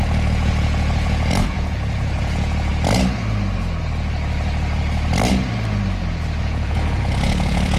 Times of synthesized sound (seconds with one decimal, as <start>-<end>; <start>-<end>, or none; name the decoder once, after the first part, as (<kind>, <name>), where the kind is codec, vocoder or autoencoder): 0.0-2.7 (vocoder, Vocos); 6.4-7.8